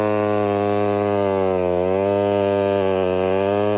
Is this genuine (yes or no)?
yes